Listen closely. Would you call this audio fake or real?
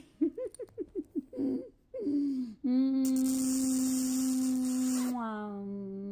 real